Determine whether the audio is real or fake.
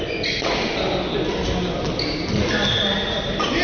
real